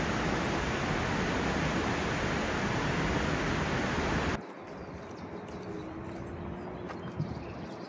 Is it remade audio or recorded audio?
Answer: recorded